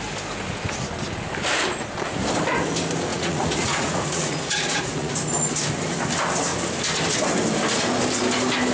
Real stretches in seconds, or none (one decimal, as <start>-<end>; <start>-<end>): 0.0-3.1; 5.1-8.7